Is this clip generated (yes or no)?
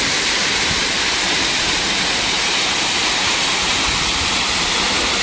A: no